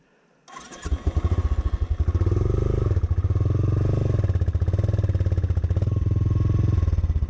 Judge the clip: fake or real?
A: real